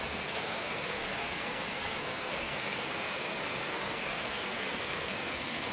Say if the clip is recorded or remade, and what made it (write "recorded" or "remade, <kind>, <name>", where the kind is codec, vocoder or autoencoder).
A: remade, codec, SNAC